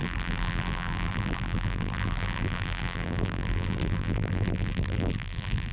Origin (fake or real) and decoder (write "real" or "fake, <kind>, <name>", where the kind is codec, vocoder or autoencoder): fake, vocoder, BigVGAN v2